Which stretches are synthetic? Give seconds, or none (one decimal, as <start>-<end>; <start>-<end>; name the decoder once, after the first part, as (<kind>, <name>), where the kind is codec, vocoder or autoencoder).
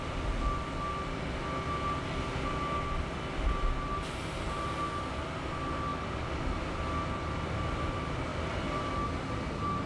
none